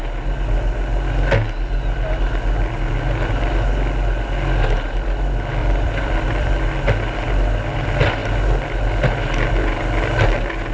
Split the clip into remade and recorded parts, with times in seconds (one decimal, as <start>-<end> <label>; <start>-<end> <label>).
0.0-5.6 recorded; 5.6-6.5 remade; 6.5-10.7 recorded